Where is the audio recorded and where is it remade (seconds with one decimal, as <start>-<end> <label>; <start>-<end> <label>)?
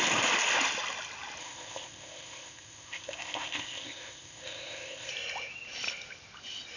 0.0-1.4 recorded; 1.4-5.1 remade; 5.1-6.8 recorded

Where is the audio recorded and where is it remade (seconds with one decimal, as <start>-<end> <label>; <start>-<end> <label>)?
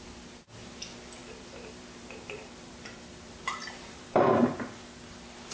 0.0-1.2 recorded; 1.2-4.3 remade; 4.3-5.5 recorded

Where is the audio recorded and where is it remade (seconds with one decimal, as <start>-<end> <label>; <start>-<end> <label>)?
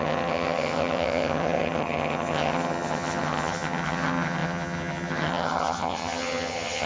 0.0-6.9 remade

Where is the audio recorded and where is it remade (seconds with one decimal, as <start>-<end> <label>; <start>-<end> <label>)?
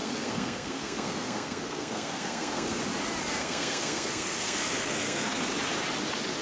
0.0-2.8 remade; 2.8-3.4 recorded; 3.4-5.4 remade; 5.4-6.4 recorded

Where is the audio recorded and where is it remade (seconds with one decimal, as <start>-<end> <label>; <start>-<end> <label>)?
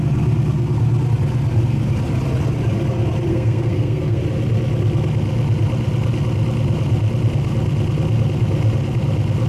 0.0-3.3 recorded; 3.3-4.2 remade; 4.2-9.5 recorded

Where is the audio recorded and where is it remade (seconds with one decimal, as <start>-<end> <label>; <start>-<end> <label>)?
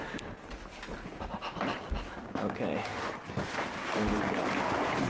0.0-2.1 recorded; 2.1-2.9 remade; 2.9-3.5 recorded; 3.5-5.1 remade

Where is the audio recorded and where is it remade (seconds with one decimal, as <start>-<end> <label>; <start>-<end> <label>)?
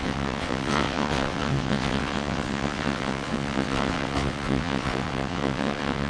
0.0-6.1 remade